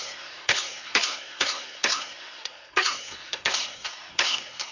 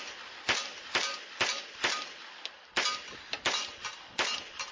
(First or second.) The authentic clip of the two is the second